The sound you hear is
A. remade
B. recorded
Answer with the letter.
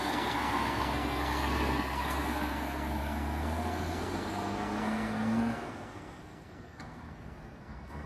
A